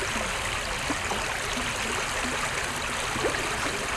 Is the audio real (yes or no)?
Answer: yes